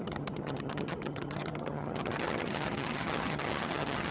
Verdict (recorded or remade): remade